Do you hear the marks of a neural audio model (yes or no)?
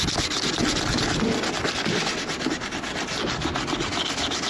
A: no